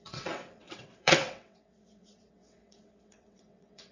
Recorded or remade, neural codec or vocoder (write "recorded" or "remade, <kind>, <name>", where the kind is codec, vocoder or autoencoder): remade, vocoder, WaveNeXt